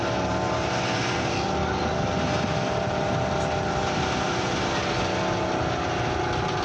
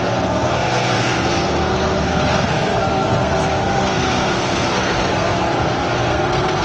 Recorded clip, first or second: first